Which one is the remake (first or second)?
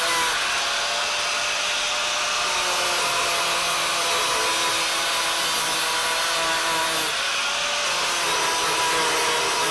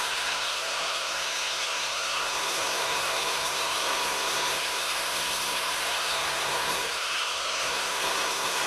second